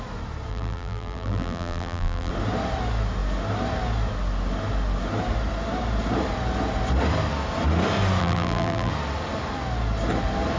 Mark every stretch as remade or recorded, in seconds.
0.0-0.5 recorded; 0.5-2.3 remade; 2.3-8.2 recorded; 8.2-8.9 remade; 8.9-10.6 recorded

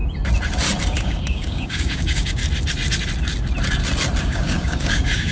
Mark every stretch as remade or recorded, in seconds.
0.0-0.9 recorded; 0.9-2.4 remade; 2.4-4.2 recorded; 4.2-5.3 remade

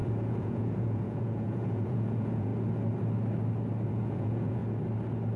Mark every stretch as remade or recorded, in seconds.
0.0-2.5 remade; 2.5-3.9 recorded; 3.9-4.6 remade; 4.6-5.4 recorded

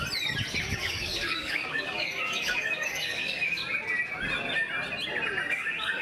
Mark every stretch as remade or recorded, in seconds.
0.0-0.6 recorded; 0.6-3.6 remade; 3.6-5.5 recorded; 5.5-6.0 remade

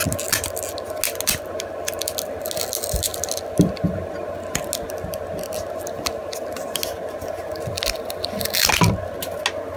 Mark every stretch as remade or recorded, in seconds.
0.0-9.8 recorded